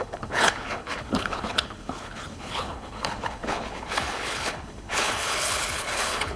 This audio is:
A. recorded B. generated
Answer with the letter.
B